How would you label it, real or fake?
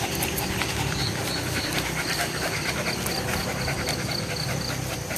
fake